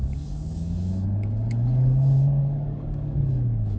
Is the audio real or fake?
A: fake